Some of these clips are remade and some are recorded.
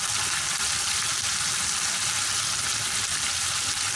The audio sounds recorded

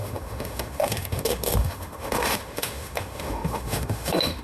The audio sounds remade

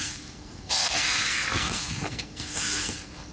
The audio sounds remade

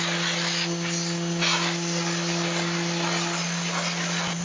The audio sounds recorded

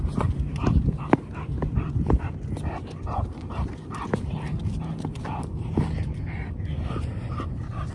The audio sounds remade